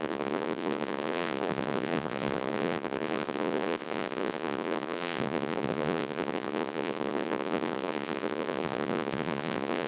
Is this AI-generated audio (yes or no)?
yes